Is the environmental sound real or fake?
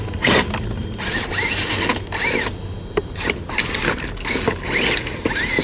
real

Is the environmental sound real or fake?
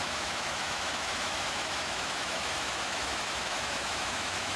fake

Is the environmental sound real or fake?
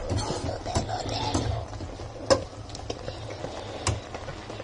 real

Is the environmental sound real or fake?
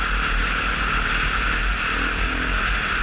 real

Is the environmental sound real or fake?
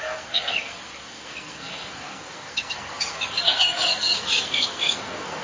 fake